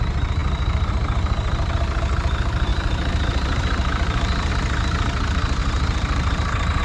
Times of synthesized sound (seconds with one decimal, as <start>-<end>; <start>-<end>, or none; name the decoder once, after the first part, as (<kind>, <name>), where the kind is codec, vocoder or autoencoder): 2.7-4.5 (vocoder, BigVGAN v2); 5.6-6.8